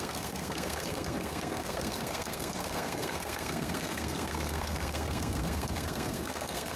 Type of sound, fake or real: fake